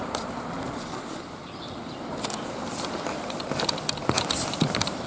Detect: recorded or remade remade